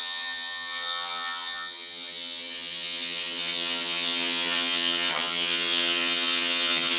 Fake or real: fake